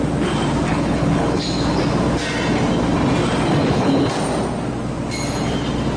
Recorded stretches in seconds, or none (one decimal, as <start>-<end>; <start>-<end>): 0.0-0.7; 1.4-3.6; 4.1-6.0